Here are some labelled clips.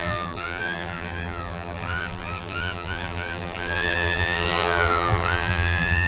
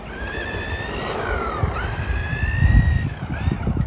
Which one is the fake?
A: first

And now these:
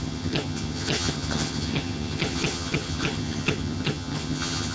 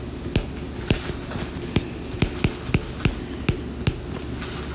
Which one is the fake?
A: first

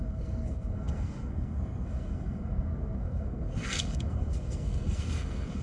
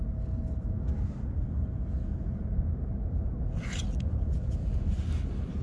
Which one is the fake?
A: first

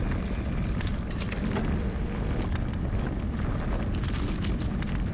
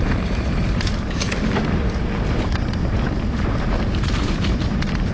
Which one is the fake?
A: second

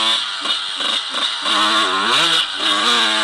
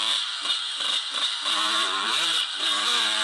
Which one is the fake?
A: second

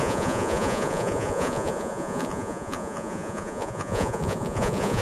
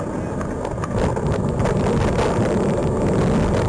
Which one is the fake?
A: first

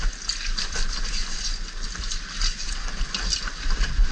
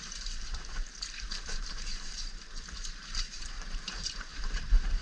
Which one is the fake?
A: second